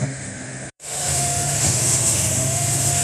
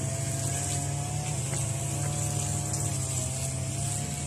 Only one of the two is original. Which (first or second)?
second